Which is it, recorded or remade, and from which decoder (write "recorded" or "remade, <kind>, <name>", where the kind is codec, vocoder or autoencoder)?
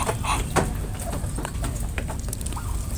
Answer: recorded